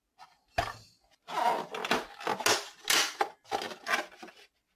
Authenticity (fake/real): real